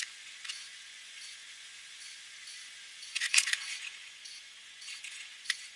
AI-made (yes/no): yes